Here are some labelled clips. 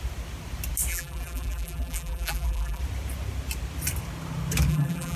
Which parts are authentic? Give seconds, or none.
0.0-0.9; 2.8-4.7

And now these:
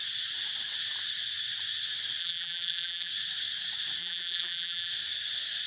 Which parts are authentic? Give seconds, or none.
0.0-2.2; 3.1-4.0; 4.9-5.7

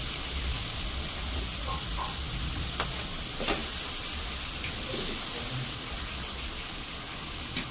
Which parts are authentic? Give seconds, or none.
0.5-2.5; 3.6-5.9

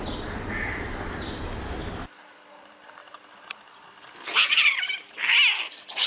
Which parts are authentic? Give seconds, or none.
0.0-3.0; 5.2-6.1